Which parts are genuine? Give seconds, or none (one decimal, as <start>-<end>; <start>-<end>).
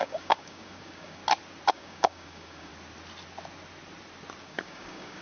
1.2-1.7; 2.7-4.4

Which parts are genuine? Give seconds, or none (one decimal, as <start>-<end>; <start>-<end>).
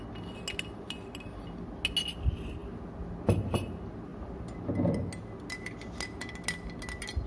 0.0-7.3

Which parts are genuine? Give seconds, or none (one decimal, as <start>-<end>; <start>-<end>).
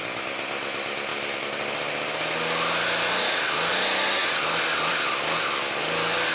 0.0-6.3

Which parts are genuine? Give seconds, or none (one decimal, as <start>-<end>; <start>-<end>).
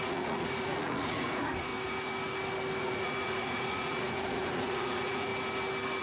1.7-2.8; 5.3-6.0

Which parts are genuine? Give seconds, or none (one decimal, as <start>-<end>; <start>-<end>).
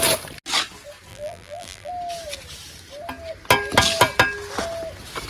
0.0-1.1; 1.9-5.3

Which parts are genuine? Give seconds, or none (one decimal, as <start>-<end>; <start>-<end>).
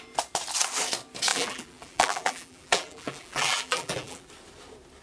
0.0-1.3; 4.3-5.0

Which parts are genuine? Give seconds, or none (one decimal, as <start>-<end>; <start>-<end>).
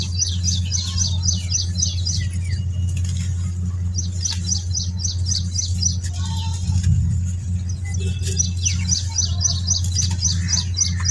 0.0-11.1